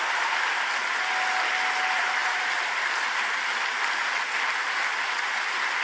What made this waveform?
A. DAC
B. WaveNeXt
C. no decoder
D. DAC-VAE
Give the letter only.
C